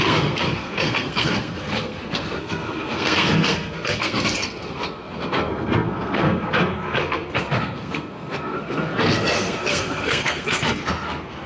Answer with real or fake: fake